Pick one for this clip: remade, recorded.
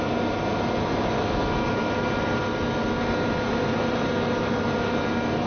recorded